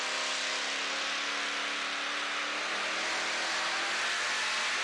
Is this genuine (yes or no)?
yes